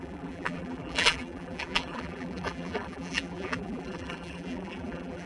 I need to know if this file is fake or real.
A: fake